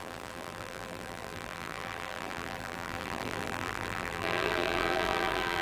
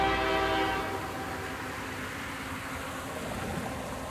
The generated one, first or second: first